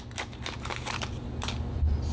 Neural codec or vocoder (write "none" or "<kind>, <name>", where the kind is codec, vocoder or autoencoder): none